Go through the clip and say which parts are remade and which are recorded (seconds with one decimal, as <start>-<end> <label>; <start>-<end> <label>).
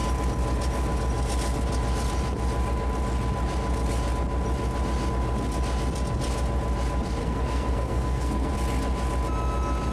0.0-7.2 recorded; 7.2-8.5 remade; 8.5-9.9 recorded